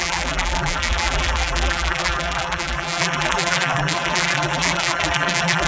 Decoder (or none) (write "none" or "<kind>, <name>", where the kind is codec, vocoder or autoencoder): vocoder, BigVGAN v2